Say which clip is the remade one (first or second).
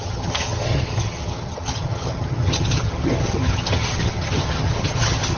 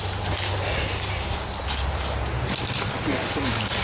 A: first